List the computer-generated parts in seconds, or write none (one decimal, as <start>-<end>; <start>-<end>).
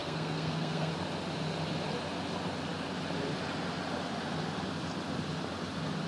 0.0-0.9